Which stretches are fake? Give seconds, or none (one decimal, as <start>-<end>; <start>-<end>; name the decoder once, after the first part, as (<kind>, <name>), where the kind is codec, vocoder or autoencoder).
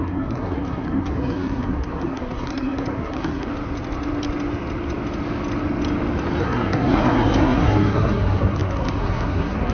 0.0-3.5 (codec, SNAC); 6.4-9.7